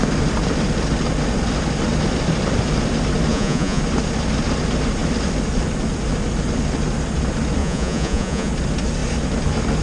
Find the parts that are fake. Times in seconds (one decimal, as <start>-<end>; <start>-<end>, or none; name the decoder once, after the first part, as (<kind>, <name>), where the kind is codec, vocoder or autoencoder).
3.3-3.8 (vocoder, Vocos); 7.6-8.5